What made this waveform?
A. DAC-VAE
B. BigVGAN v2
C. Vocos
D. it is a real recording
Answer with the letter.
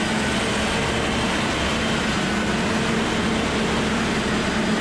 D